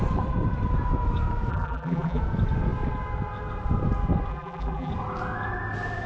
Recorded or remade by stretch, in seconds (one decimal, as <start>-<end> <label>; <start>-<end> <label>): 0.0-1.5 recorded; 1.5-2.2 remade; 2.2-4.3 recorded; 4.3-4.9 remade; 4.9-6.1 recorded